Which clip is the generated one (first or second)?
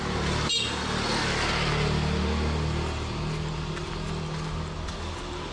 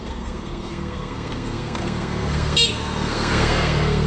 second